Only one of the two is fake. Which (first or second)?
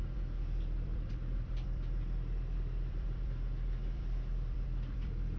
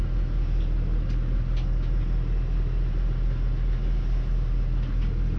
first